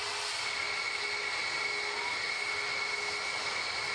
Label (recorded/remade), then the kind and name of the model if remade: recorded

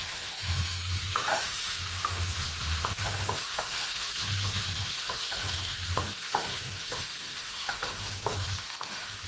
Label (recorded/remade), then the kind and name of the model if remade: remade, autoencoder, DAC-VAE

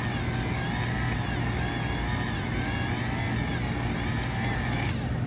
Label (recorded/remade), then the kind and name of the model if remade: recorded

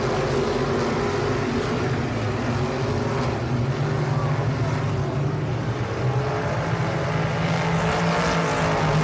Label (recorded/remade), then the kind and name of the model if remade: recorded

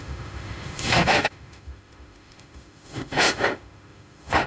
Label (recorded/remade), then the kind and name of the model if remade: remade, autoencoder, DAC-VAE